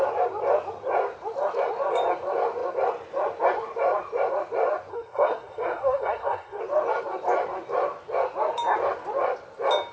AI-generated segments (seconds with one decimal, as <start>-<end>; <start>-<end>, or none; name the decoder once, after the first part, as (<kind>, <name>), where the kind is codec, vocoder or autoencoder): 4.9-6.6 (codec, SNAC)

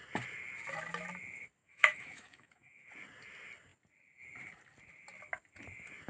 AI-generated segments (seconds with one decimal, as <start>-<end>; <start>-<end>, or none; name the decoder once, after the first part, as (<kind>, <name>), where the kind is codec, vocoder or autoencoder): 1.6-2.9 (autoencoder, DAC-VAE)

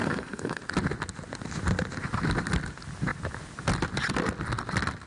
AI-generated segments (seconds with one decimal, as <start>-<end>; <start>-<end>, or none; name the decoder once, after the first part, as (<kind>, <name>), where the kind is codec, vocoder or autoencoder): 0.0-0.6 (codec, SNAC)